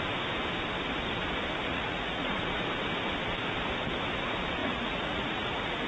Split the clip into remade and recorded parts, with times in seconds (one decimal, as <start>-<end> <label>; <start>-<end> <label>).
0.0-1.7 recorded; 1.7-2.7 remade; 2.7-4.6 recorded; 4.6-5.9 remade